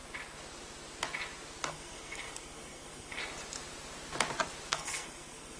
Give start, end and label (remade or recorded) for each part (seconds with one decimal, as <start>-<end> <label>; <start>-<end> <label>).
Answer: 0.0-1.7 recorded; 1.7-3.2 remade; 3.2-4.7 recorded; 4.7-5.6 remade